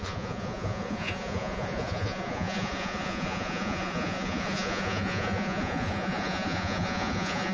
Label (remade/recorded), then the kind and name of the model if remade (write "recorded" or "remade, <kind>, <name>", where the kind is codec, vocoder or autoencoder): remade, vocoder, Vocos